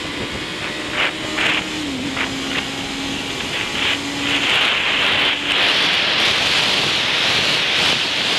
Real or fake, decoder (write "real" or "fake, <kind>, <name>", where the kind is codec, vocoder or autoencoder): real